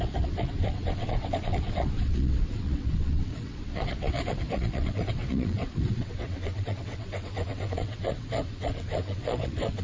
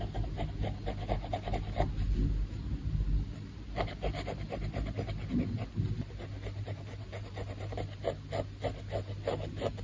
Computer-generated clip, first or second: first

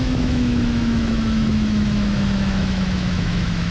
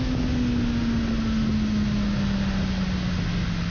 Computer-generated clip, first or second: first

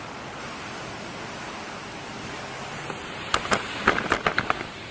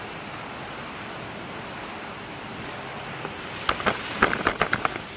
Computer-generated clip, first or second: second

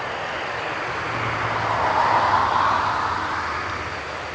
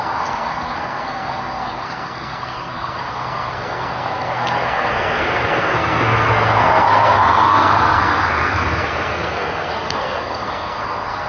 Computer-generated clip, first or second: second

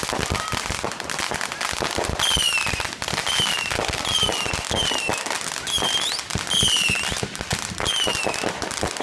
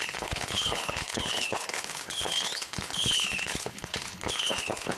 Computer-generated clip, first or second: second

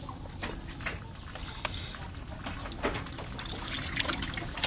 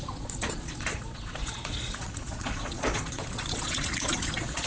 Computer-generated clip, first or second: second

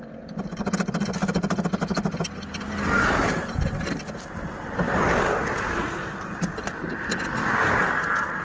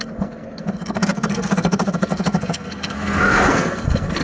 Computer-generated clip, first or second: second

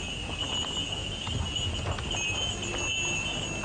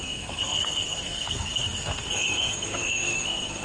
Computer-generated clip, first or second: second